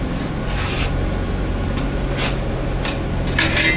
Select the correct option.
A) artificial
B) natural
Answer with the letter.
B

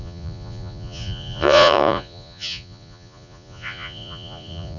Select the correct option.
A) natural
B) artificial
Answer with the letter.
B